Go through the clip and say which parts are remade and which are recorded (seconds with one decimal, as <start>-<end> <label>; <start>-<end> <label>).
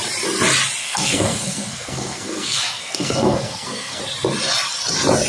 0.0-0.8 recorded; 0.8-4.0 remade; 4.0-5.3 recorded